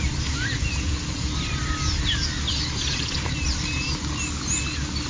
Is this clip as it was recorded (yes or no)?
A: yes